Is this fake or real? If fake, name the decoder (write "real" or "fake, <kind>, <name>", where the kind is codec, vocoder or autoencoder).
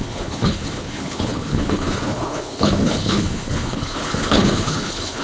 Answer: fake, codec, HILCodec